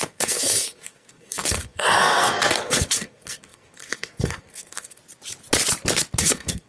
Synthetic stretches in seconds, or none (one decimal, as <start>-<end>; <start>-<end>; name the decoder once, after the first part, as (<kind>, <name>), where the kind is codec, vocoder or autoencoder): 0.0-5.0 (codec, SNAC); 6.2-6.7